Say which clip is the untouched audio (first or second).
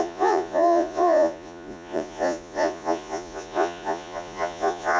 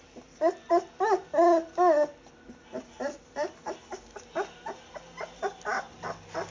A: second